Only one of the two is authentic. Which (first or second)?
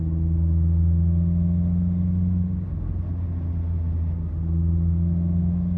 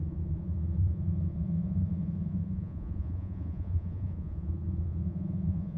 first